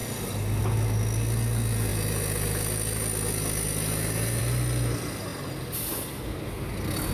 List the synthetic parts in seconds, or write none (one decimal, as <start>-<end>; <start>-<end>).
none